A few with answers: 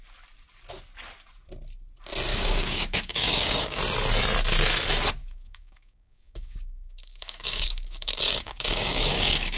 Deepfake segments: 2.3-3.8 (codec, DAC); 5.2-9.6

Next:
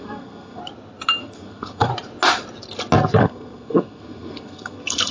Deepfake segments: 0.0-0.6 (codec, SNAC); 1.2-1.9; 3.2-5.1

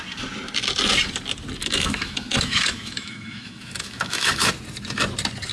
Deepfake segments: 1.6-4.5 (autoencoder, DAC-VAE)

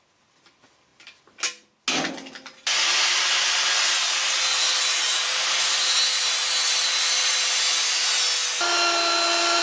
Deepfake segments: none

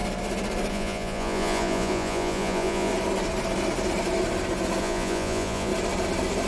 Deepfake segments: 0.7-2.9 (vocoder, Vocos); 4.8-5.7